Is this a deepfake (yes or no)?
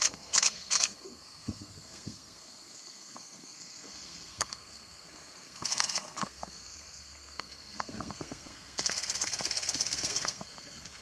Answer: yes